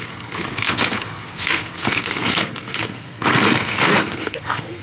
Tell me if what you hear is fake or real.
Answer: fake